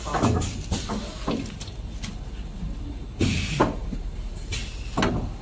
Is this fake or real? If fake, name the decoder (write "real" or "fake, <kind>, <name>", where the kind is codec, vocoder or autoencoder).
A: real